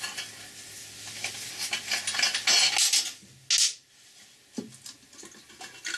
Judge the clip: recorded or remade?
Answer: recorded